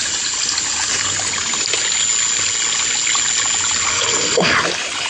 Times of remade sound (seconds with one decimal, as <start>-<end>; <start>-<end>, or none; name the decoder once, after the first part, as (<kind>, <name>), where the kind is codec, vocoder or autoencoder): 3.9-4.5 (codec, SNAC)